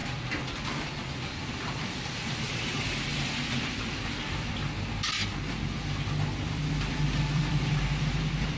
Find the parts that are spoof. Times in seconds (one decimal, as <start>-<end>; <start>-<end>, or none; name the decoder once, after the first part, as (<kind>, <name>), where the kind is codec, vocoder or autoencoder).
0.0-1.8 (vocoder, BigVGAN v2); 3.1-4.5; 5.2-7.7